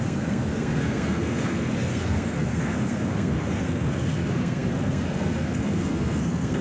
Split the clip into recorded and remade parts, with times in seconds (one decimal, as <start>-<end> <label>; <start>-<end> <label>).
0.0-6.6 remade